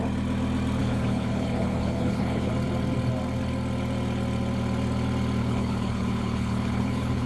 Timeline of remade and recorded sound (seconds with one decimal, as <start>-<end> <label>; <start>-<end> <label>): 0.0-0.8 recorded; 0.8-2.5 remade; 2.5-5.4 recorded; 5.4-7.3 remade